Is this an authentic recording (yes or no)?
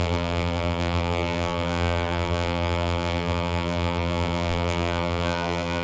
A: no